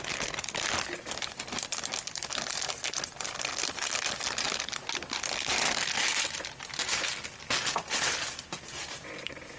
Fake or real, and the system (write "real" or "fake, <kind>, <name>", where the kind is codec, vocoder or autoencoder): real